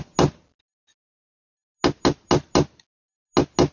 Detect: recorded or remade recorded